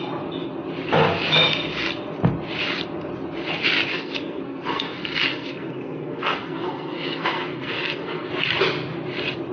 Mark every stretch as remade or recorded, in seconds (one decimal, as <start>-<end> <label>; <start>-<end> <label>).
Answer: 0.0-3.9 recorded; 3.9-8.3 remade; 8.3-9.5 recorded